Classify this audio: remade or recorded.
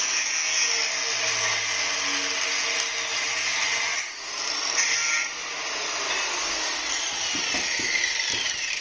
recorded